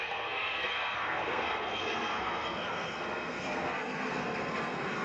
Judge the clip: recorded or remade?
remade